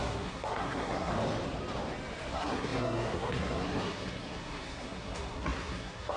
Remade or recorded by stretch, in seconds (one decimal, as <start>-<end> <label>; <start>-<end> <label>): 0.0-1.1 remade; 1.1-2.3 recorded; 2.3-6.2 remade